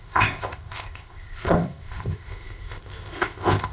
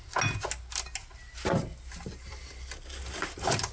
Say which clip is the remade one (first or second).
first